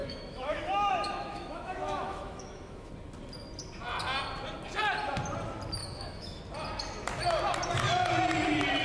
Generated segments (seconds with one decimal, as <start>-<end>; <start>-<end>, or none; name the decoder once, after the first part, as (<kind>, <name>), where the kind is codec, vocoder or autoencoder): 0.0-2.9 (autoencoder, DAC-VAE); 5.8-6.4